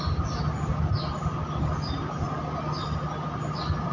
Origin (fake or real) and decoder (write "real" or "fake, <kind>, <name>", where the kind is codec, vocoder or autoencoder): real